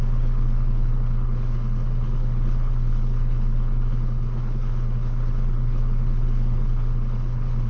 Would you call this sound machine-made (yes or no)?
yes